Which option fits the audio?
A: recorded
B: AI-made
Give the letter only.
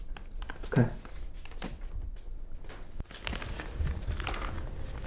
A